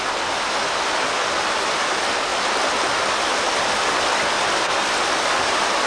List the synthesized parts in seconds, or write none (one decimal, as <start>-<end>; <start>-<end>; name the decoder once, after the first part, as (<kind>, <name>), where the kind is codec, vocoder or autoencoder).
none